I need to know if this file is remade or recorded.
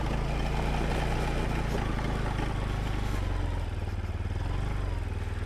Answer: recorded